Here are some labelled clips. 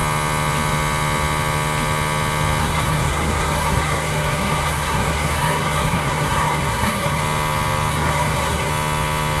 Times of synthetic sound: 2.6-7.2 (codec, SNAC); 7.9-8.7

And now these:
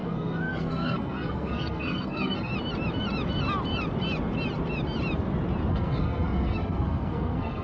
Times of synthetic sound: 0.0-2.5 (codec, SNAC); 5.7-7.6